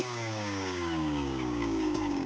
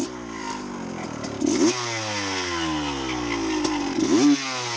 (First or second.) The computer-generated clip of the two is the first